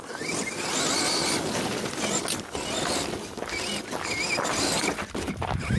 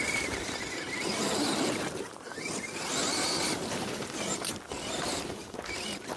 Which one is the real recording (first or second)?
first